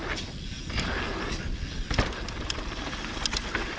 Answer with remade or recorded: recorded